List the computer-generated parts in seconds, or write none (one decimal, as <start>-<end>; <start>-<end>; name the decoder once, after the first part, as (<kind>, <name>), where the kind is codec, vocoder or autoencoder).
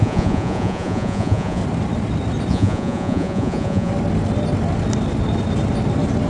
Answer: 0.0-1.6 (vocoder, Vocos); 2.5-3.9